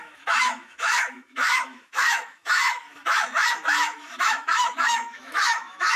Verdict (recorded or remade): remade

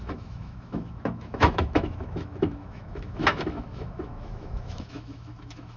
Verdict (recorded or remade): remade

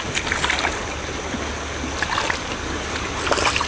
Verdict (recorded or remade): recorded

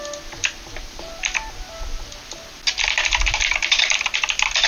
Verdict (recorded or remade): recorded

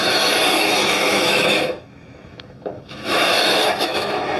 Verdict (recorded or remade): remade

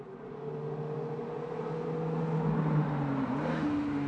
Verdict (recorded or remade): recorded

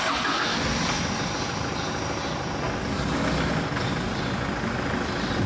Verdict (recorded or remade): recorded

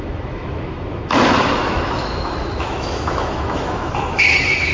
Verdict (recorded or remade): remade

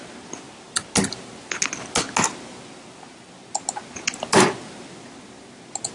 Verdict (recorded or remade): recorded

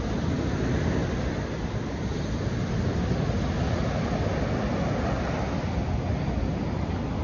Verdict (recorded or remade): recorded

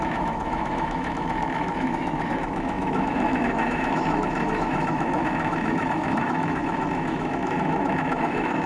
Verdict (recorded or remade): remade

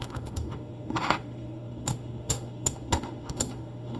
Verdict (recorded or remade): remade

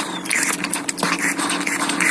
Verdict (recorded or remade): recorded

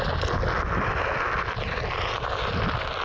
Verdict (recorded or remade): recorded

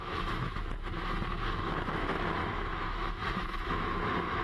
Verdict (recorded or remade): remade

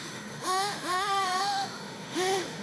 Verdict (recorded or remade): remade